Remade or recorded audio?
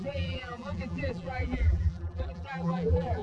remade